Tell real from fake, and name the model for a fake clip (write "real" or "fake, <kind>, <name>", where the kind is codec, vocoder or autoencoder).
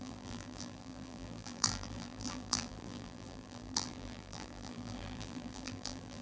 fake, vocoder, BigVGAN v2